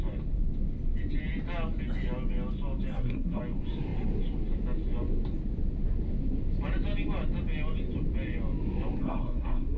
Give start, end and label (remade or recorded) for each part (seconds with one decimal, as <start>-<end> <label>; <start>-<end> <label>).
0.0-2.9 recorded; 2.9-3.4 remade; 3.4-9.0 recorded; 9.0-9.8 remade